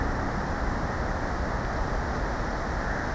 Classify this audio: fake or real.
real